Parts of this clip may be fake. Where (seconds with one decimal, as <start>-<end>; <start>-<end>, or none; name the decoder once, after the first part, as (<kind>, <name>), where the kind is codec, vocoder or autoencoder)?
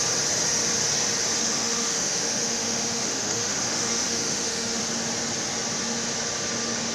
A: 1.4-4.8 (autoencoder, DAC-VAE)